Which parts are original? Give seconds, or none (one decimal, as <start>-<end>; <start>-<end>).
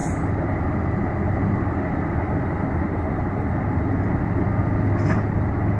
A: 0.0-5.8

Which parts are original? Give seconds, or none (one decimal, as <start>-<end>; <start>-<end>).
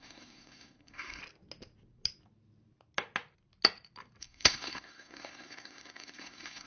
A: 1.2-4.2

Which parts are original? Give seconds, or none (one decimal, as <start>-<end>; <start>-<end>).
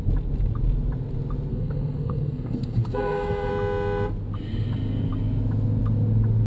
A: 0.0-1.5; 3.5-6.5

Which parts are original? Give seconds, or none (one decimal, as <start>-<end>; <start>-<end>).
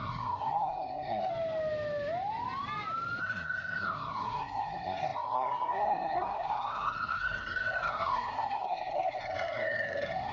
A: 1.3-3.2